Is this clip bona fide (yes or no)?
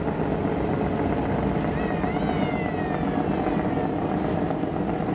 yes